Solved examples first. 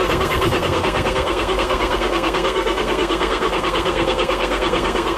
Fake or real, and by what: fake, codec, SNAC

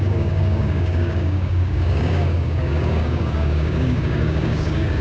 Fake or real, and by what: fake, codec, DAC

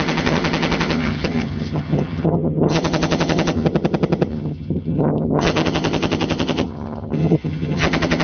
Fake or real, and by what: fake, vocoder, HiFi-GAN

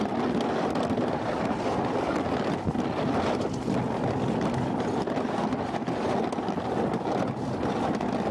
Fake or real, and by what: real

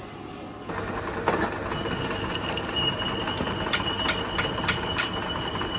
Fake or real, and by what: real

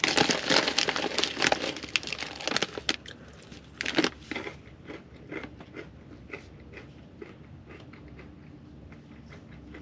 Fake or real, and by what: real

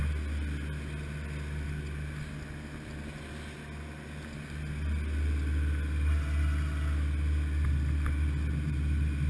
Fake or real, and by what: real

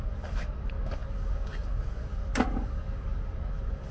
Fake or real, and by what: fake, codec, DAC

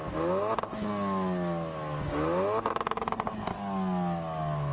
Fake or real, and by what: real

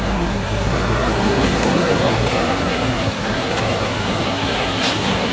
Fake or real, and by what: fake, codec, SNAC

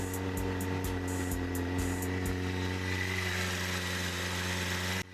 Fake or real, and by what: real